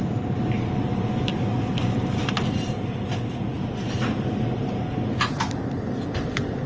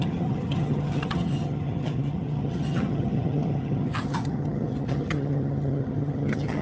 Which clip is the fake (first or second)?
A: second